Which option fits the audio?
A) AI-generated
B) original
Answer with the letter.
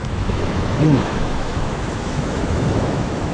A